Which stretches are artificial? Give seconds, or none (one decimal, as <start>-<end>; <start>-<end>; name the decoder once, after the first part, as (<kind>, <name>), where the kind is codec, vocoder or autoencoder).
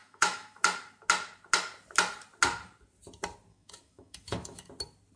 0.0-0.6 (autoencoder, DAC-VAE); 3.5-4.7